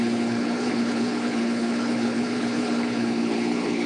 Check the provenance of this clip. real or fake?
fake